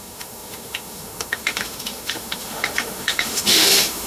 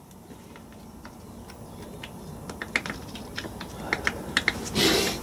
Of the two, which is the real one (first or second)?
second